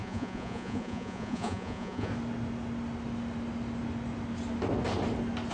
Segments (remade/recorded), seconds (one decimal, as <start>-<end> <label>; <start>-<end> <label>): 0.0-2.1 remade; 2.1-5.5 recorded